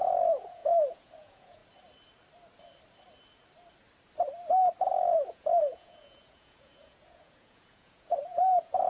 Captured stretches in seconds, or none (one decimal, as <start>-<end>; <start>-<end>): 1.6-4.8